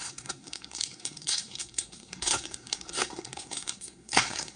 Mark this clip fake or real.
fake